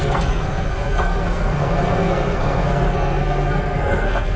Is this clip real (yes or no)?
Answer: no